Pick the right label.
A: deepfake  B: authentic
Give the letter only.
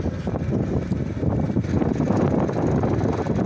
B